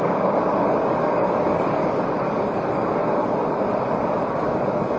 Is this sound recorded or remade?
remade